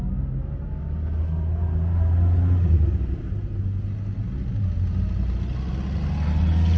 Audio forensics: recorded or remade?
recorded